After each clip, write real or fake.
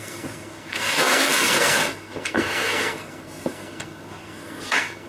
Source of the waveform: fake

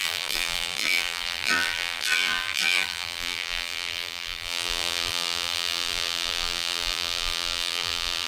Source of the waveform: fake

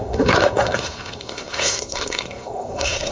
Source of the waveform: fake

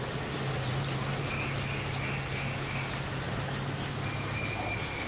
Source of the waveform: real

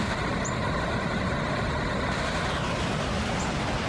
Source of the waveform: real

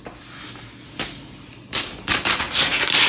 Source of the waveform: real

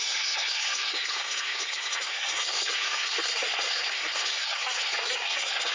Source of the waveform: fake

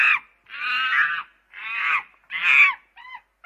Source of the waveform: real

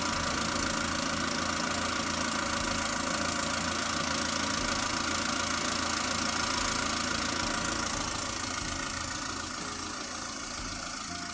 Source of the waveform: real